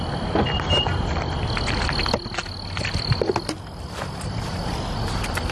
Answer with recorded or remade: recorded